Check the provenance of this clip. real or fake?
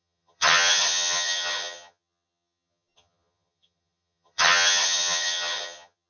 fake